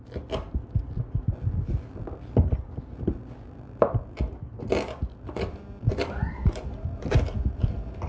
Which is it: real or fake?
real